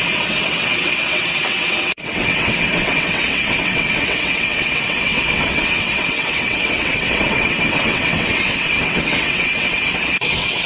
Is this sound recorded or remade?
remade